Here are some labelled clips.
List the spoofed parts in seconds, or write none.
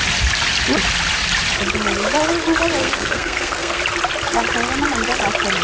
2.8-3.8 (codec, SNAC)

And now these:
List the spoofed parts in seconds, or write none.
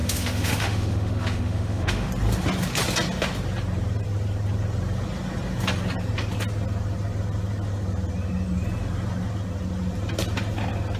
0.0-2.1 (autoencoder, DAC-VAE)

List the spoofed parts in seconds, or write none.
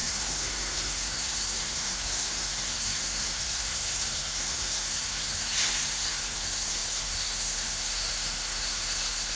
0.0-9.4 (codec, SNAC)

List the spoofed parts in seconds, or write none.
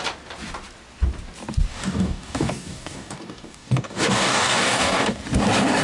1.7-5.2 (codec, DAC)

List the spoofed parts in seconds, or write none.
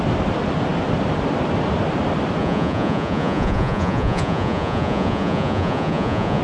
2.4-6.4 (vocoder, Vocos)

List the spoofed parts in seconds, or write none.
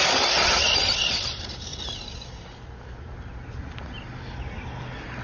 none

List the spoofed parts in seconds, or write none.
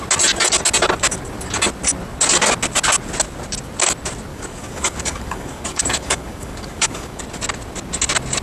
4.3-7.2 (codec, DAC)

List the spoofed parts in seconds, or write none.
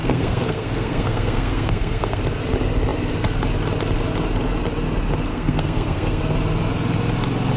0.0-2.2 (codec, SNAC); 5.3-6.2